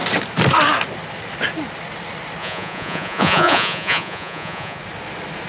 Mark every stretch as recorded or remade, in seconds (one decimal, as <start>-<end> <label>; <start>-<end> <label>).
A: 0.0-2.4 recorded; 2.4-4.8 remade; 4.8-5.5 recorded